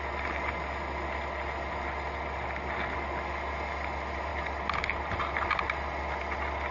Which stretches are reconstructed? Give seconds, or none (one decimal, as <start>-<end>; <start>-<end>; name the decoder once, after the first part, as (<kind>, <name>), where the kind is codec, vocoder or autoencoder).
none